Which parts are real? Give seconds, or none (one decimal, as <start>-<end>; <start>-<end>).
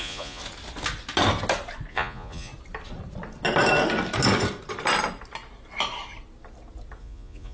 0.4-1.9; 2.5-7.0